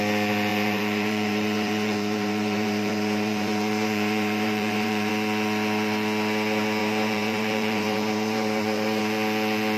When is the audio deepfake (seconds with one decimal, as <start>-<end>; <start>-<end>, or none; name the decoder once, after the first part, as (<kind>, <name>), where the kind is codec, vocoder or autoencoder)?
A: 0.5-5.1 (vocoder, BigVGAN v2); 6.8-9.0

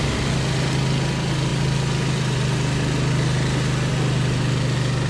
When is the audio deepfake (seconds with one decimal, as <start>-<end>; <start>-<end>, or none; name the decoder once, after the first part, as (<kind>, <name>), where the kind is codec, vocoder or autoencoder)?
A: none

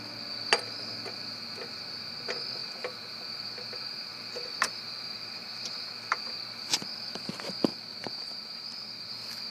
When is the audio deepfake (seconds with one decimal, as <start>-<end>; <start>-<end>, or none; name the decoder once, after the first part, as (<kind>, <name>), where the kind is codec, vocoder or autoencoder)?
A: 2.6-6.2 (vocoder, BigVGAN v2); 7.7-9.1

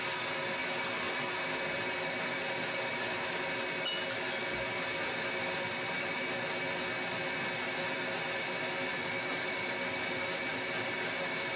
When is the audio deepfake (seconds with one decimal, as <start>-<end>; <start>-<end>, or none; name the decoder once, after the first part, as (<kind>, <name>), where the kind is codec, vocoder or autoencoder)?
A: none

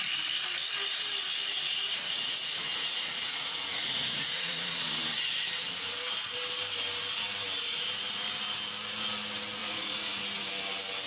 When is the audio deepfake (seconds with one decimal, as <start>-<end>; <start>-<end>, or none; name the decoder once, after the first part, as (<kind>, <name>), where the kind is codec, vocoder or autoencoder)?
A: 1.5-5.0 (vocoder, Vocos); 9.6-10.2